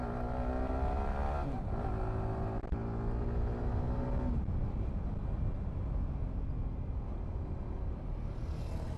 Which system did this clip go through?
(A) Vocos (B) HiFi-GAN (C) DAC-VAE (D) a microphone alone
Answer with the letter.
D